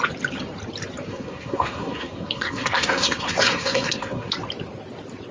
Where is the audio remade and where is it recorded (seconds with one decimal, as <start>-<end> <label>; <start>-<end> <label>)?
0.0-1.1 recorded; 1.1-4.3 remade; 4.3-5.3 recorded